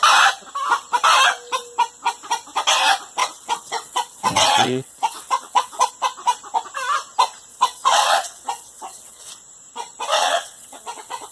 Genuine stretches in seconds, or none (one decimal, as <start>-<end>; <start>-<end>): 0.0-3.2; 5.9-7.5; 9.3-10.1

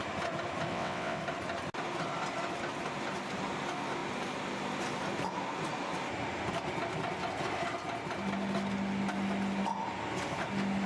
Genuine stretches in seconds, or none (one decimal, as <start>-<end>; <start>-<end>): 0.0-0.7; 1.2-10.9

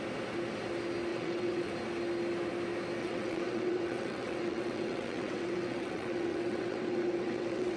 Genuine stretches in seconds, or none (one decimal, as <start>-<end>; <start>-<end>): 0.0-1.1; 1.7-3.0

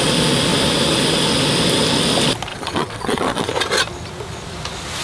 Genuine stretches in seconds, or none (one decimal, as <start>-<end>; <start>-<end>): 0.0-2.5; 3.5-5.0

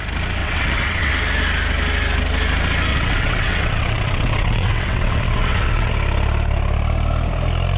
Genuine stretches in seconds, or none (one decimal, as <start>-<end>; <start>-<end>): 0.0-0.4; 1.1-2.9; 5.9-7.8